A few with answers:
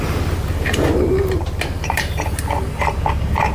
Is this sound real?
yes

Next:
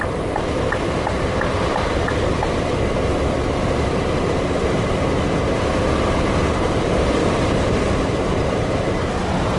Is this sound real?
no